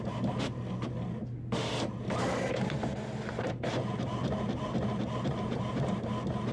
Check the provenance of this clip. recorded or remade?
remade